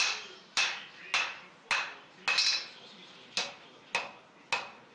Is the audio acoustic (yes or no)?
yes